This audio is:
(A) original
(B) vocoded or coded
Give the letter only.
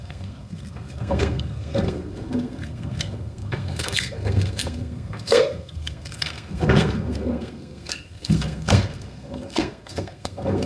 B